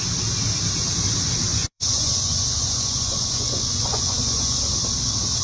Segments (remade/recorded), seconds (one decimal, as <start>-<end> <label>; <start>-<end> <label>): 0.0-1.5 recorded; 1.5-4.7 remade; 4.7-5.4 recorded